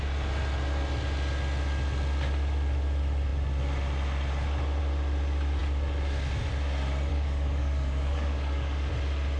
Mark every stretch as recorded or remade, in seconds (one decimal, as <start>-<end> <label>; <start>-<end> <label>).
0.0-7.1 recorded; 7.1-8.9 remade; 8.9-9.4 recorded